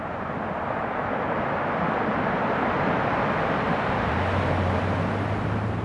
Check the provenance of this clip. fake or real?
real